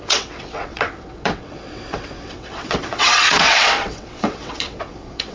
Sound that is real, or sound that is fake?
fake